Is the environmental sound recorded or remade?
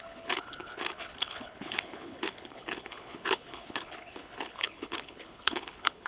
remade